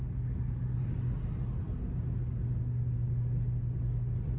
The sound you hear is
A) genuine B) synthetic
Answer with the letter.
A